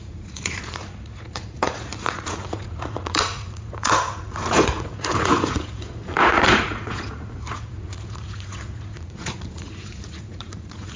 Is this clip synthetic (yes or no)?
yes